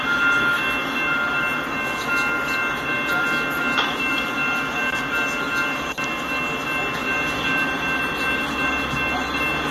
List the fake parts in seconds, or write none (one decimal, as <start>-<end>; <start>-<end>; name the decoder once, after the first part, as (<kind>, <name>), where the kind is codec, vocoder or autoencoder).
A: none